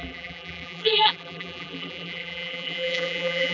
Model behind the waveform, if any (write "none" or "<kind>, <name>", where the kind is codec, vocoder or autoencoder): vocoder, BigVGAN v2